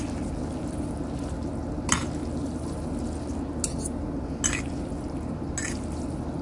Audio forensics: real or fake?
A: real